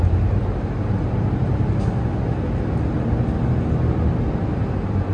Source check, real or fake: real